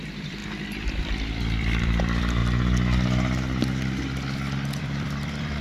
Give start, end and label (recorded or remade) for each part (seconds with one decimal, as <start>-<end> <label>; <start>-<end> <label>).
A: 0.0-2.4 remade; 2.4-4.8 recorded; 4.8-5.6 remade

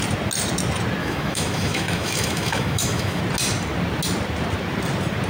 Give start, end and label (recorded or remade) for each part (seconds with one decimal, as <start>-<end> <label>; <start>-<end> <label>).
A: 0.0-1.0 recorded; 1.0-3.2 remade; 3.2-5.3 recorded

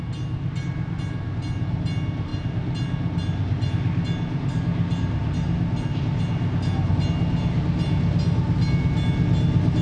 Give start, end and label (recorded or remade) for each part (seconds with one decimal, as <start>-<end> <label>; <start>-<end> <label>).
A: 0.0-9.8 recorded

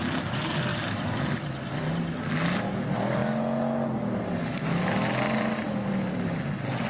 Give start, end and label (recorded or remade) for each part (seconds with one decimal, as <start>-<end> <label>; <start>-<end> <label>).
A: 0.0-0.7 recorded; 0.7-1.9 remade; 1.9-6.9 recorded

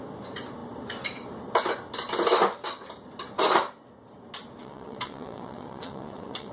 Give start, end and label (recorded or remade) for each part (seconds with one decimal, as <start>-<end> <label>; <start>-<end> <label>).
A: 0.0-4.6 recorded; 4.6-6.5 remade